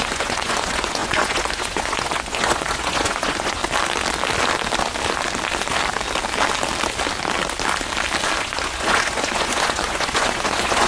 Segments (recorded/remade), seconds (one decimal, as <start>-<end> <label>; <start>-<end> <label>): 0.0-3.6 remade; 3.6-8.4 recorded; 8.4-10.9 remade